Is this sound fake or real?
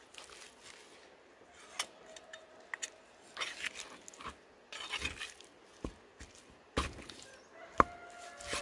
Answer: real